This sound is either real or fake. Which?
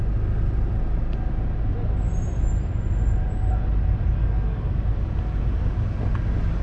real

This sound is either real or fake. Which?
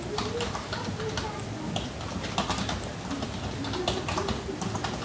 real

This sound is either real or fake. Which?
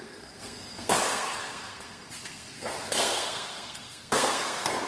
fake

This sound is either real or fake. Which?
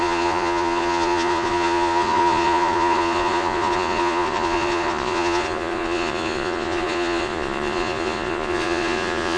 fake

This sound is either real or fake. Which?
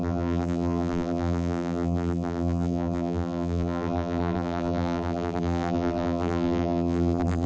fake